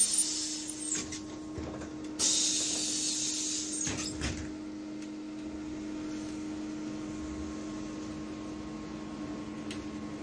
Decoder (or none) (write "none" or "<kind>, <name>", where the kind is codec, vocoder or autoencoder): none